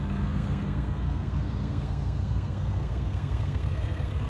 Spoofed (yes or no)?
yes